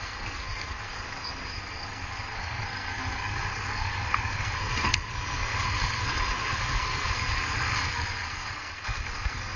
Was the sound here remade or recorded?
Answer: remade